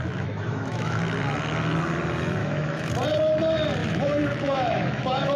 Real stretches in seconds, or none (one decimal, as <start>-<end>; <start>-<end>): 1.0-2.4; 2.9-3.8